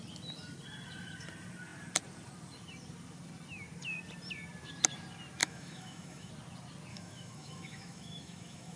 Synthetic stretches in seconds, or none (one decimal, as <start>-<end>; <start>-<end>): 5.4-6.3; 6.9-8.8